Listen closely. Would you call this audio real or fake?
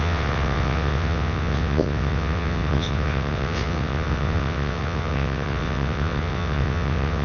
fake